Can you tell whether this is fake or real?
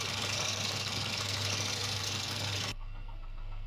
fake